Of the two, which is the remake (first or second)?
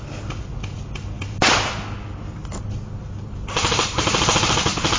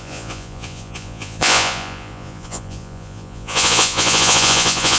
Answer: second